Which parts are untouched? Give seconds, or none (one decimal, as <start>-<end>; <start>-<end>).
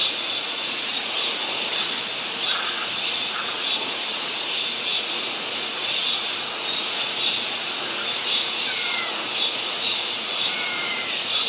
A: 1.7-2.3